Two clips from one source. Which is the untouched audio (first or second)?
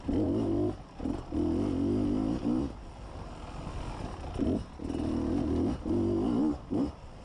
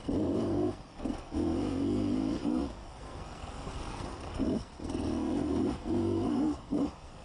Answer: first